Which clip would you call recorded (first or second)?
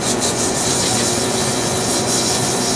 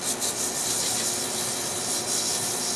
second